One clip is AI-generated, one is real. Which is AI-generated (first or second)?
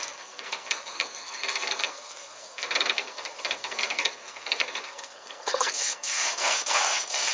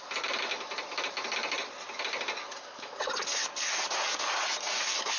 first